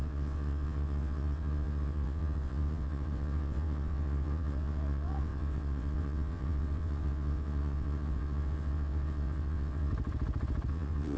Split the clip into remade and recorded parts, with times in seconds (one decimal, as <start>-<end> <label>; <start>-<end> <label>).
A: 0.0-9.9 remade; 9.9-10.7 recorded; 10.7-11.2 remade